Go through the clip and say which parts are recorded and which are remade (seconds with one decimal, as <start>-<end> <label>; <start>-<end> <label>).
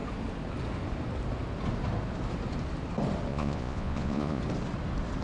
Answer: 0.0-3.3 recorded; 3.3-4.4 remade; 4.4-5.2 recorded